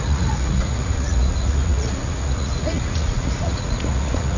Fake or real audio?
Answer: fake